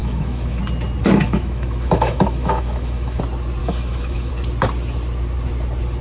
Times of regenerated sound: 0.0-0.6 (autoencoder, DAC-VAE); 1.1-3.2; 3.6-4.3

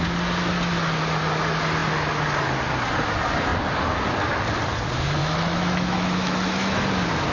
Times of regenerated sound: 5.2-6.8 (autoencoder, DAC-VAE)

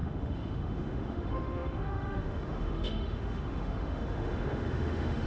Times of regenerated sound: 0.0-5.3 (autoencoder, DAC-VAE)

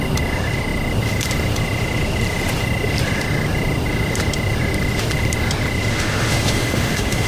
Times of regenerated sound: 5.9-7.3 (autoencoder, DAC-VAE)

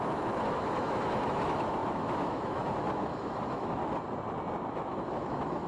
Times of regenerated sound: 0.0-3.8 (autoencoder, DAC-VAE); 4.7-5.7

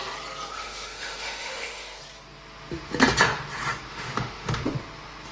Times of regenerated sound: 0.5-2.0 (autoencoder, DAC-VAE); 3.9-4.5

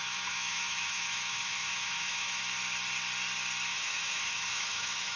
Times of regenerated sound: 0.0-2.4 (autoencoder, DAC-VAE); 3.7-5.2

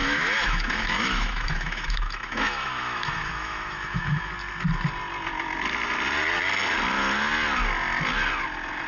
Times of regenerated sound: 0.0-4.3 (autoencoder, DAC-VAE)